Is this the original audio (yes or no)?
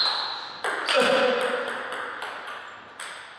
yes